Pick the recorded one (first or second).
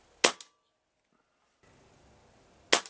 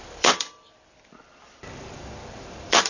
first